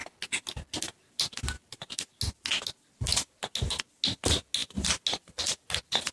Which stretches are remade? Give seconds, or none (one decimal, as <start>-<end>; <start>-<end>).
none